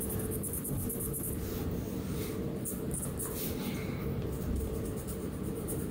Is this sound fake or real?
real